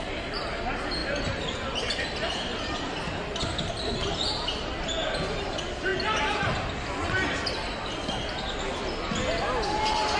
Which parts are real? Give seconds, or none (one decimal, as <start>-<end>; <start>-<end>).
0.0-10.2

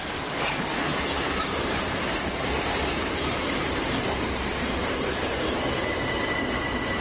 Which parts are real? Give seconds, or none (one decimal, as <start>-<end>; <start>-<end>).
0.0-0.9; 4.3-7.0

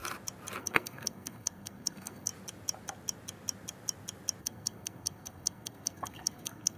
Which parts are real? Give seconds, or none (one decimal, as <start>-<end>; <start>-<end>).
0.0-0.6; 2.3-4.4

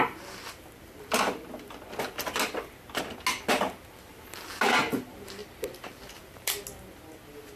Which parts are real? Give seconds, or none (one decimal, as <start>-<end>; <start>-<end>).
0.0-5.4; 6.1-7.6

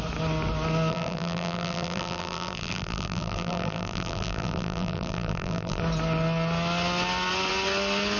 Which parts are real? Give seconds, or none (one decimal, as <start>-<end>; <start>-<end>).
0.0-0.9; 5.8-8.2